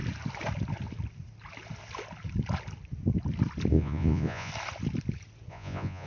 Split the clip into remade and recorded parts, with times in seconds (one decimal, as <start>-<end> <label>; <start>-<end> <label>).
0.0-3.7 recorded; 3.7-4.5 remade; 4.5-5.5 recorded; 5.5-6.1 remade